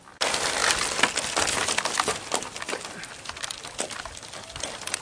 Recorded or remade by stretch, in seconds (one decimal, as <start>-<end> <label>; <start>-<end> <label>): 0.0-5.0 recorded